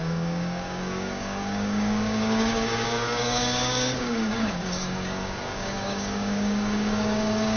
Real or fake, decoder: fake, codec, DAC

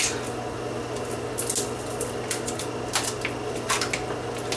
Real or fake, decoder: real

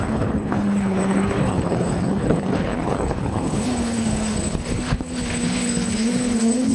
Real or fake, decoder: fake, codec, HILCodec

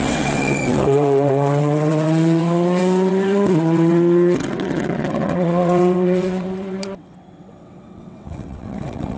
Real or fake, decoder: fake, vocoder, WaveNeXt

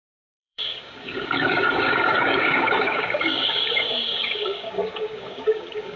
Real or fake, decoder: fake, codec, DAC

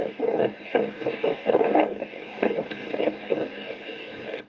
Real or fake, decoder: fake, codec, DAC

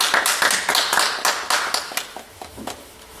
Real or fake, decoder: real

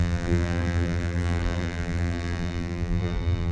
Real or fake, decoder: fake, vocoder, BigVGAN v2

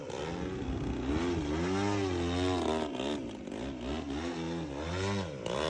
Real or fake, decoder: real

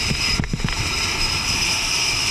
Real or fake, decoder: real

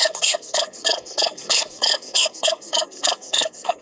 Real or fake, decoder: fake, codec, SNAC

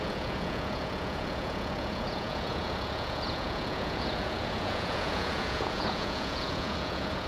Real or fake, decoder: fake, vocoder, Vocos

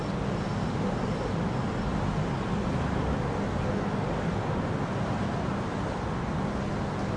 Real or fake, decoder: real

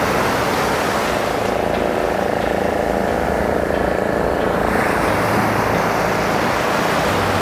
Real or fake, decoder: real